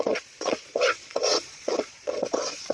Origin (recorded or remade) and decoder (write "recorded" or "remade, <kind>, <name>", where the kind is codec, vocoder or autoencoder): remade, vocoder, Vocos